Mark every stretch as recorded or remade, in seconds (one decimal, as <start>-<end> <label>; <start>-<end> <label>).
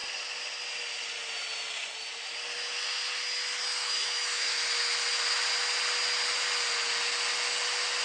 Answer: 0.0-3.8 recorded; 3.8-4.6 remade; 4.6-8.0 recorded